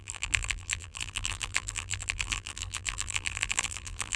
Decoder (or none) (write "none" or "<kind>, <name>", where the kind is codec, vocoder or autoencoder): vocoder, BigVGAN v2